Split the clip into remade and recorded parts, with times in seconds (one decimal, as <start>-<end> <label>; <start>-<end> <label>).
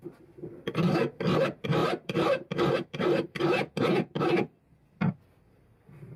0.0-1.8 recorded; 1.8-4.6 remade; 4.6-6.2 recorded